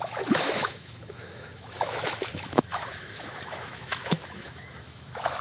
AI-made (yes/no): yes